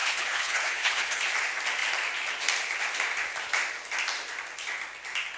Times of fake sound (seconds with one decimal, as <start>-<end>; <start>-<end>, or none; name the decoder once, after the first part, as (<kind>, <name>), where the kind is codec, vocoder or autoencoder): 0.0-1.2 (codec, HILCodec)